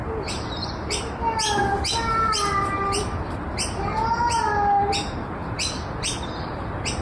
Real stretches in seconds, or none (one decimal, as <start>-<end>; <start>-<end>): 0.6-4.8; 5.4-7.0